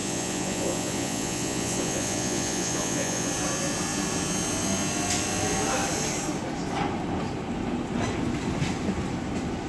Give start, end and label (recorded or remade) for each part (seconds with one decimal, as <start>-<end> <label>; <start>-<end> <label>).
0.0-3.3 remade; 3.3-9.7 recorded